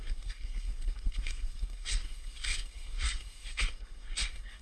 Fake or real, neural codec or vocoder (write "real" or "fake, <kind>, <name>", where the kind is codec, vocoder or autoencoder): fake, codec, SNAC